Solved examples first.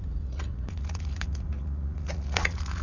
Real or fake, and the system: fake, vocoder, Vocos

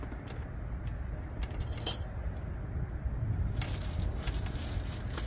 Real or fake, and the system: real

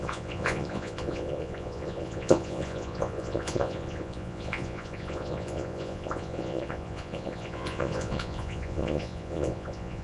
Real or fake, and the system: fake, vocoder, Vocos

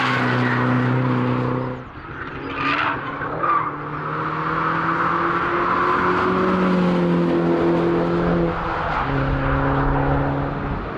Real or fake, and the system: real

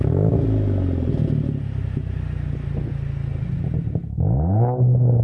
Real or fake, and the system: real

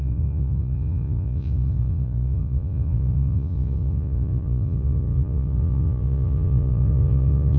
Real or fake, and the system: fake, vocoder, Vocos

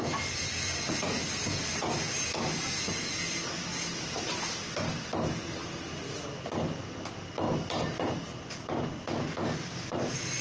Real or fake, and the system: real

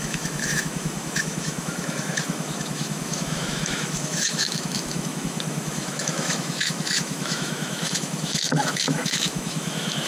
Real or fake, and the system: fake, autoencoder, DAC-VAE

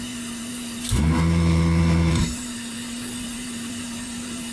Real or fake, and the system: fake, vocoder, BigVGAN v2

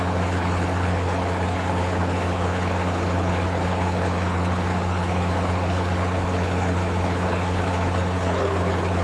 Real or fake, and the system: fake, codec, HILCodec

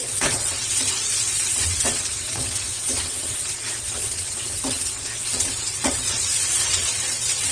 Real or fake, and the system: fake, vocoder, WaveNeXt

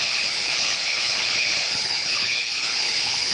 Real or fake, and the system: fake, codec, HILCodec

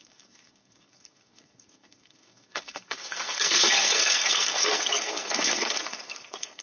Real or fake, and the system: fake, codec, SNAC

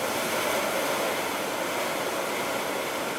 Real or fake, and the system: real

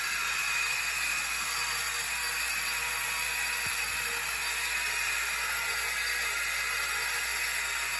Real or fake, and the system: real